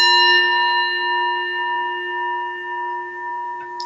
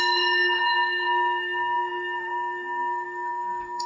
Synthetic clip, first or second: second